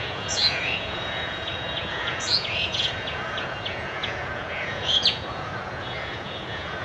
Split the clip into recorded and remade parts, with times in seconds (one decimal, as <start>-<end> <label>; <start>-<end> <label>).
0.0-6.8 remade